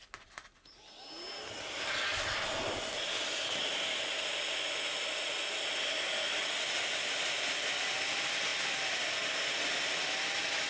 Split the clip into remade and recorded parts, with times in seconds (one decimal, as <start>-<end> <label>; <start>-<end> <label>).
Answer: 0.0-10.7 recorded